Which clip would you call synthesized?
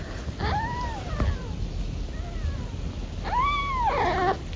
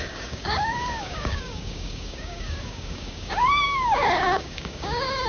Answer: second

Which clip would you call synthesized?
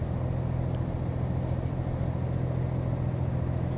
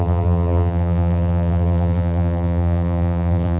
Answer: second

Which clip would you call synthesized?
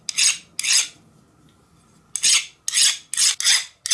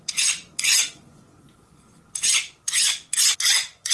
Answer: second